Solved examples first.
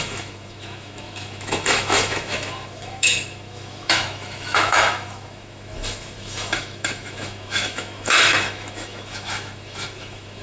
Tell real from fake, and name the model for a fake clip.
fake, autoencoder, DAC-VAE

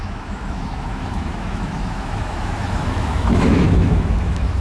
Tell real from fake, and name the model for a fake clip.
fake, autoencoder, DAC-VAE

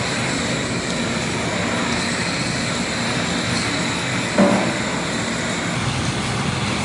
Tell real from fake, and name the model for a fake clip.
real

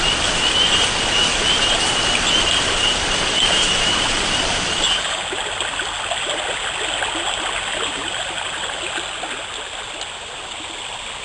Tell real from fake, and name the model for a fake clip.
real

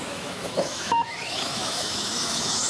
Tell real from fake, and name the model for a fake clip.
fake, autoencoder, DAC-VAE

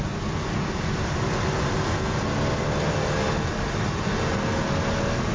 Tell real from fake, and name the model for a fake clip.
real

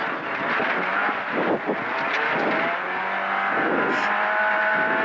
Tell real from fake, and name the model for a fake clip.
real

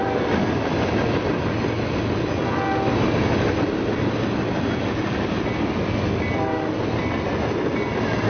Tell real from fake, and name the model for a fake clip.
real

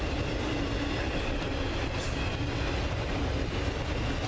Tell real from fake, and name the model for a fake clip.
real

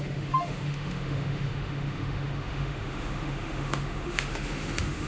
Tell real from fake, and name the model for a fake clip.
fake, autoencoder, DAC-VAE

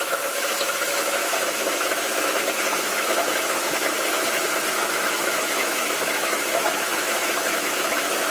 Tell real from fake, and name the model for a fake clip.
fake, autoencoder, DAC-VAE